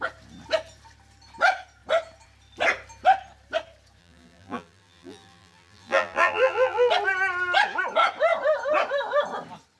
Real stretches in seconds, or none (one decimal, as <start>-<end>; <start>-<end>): 0.0-4.0; 6.9-9.8